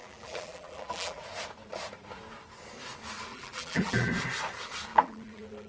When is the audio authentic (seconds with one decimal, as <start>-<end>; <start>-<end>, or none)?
1.2-3.3; 4.1-4.9